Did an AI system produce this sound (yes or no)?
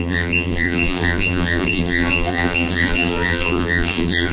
yes